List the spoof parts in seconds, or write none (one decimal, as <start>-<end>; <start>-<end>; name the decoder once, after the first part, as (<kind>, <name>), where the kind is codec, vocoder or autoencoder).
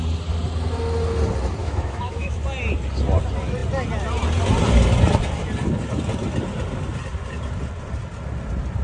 1.6-2.4 (autoencoder, DAC-VAE)